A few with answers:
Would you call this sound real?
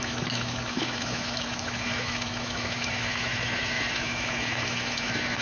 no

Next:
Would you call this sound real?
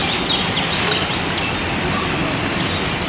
yes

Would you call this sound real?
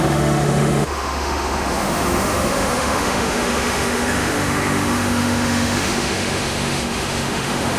no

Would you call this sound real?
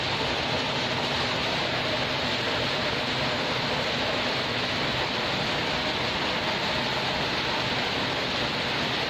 yes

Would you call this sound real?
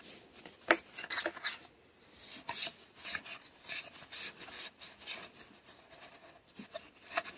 yes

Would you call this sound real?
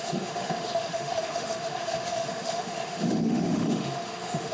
no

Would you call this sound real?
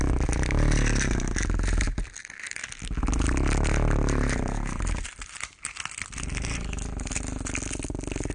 yes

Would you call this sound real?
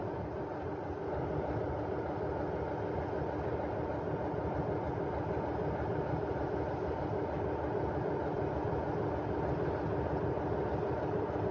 yes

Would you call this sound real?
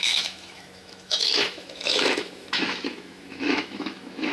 no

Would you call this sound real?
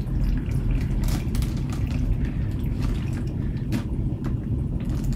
yes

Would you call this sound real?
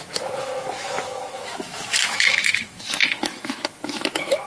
no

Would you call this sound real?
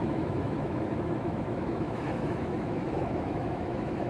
no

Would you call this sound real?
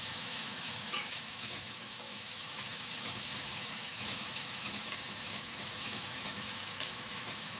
no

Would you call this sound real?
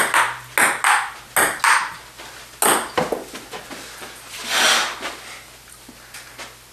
yes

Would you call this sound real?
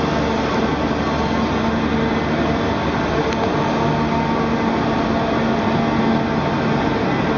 yes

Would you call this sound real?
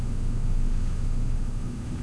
no